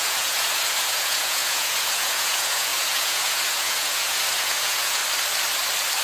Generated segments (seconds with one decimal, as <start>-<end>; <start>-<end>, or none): 0.0-5.0